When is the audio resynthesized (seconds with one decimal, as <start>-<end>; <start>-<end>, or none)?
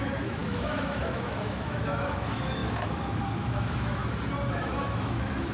0.0-4.0; 4.5-5.5